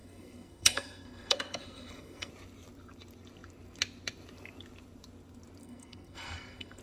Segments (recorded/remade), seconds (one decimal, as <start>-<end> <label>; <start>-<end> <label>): 0.0-2.3 remade; 2.3-5.6 recorded; 5.6-6.8 remade

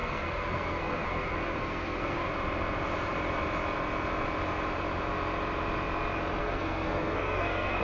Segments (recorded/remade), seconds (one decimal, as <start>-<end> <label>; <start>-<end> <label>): 0.0-2.3 remade; 2.3-6.4 recorded; 6.4-7.8 remade

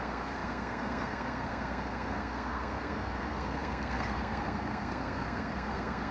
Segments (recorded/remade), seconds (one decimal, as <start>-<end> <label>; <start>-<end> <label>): 0.0-6.1 remade

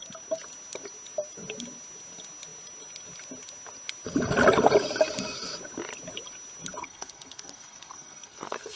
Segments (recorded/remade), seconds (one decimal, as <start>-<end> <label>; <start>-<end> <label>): 0.0-6.8 recorded; 6.8-8.8 remade